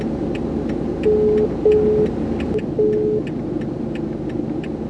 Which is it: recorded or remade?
recorded